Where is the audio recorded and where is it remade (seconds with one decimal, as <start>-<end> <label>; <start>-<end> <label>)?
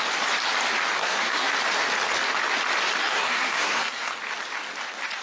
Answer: 0.0-1.0 recorded; 1.0-1.5 remade; 1.5-3.0 recorded; 3.0-4.1 remade; 4.1-5.2 recorded